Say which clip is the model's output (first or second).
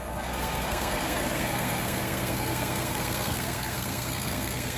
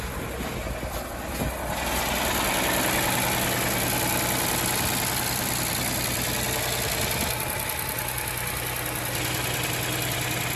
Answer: first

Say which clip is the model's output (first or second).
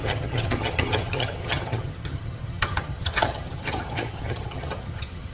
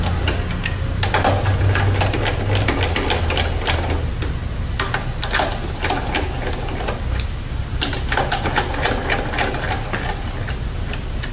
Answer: first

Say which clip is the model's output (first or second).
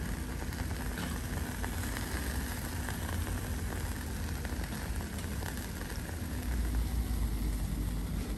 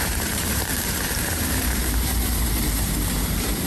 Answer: second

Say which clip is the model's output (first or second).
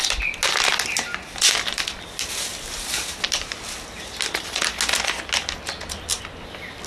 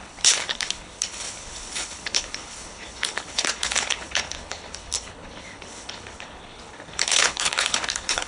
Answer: second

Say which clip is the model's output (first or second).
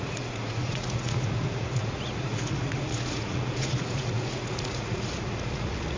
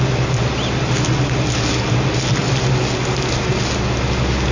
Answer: first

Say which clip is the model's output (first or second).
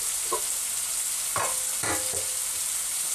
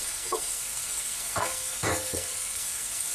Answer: second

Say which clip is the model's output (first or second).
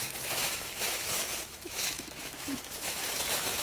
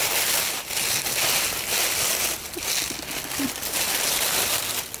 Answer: first